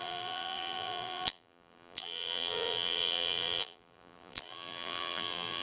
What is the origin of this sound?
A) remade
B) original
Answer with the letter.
A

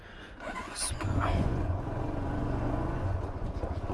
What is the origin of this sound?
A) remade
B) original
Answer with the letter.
A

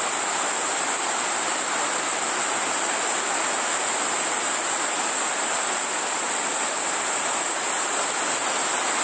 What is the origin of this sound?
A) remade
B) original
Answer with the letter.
B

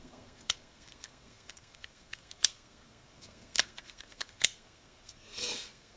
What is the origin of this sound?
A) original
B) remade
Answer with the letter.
B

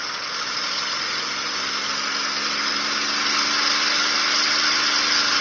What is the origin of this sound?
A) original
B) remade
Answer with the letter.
A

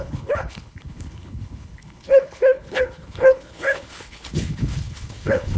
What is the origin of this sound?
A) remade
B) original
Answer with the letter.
A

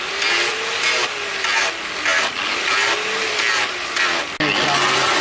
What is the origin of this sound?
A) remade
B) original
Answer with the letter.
B